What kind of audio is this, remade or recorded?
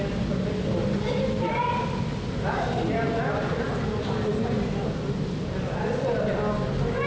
recorded